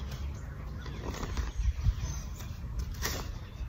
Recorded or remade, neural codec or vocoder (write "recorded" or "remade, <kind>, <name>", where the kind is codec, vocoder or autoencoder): recorded